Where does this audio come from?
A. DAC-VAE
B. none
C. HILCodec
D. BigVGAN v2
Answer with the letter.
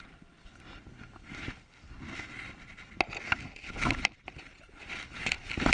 B